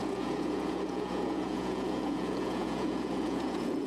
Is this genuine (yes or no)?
no